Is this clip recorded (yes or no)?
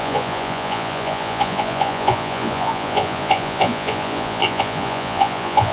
no